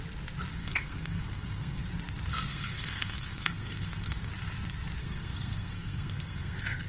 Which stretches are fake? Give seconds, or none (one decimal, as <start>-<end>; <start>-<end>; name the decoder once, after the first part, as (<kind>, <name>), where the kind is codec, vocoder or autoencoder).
0.6-1.9 (codec, SNAC); 2.3-4.3; 5.0-6.9